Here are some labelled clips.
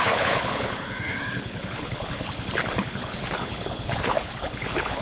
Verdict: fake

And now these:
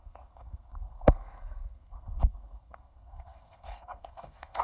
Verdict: fake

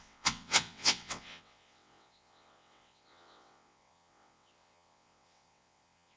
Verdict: fake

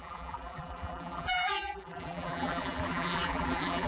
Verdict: fake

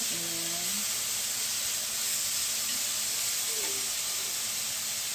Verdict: real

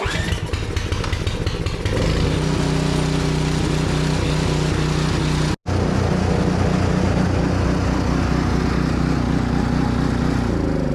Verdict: real